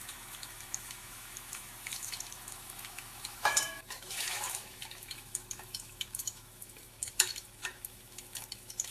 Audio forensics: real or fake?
fake